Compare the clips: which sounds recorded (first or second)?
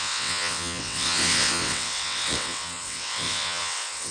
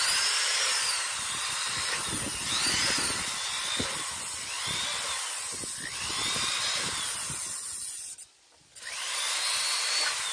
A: second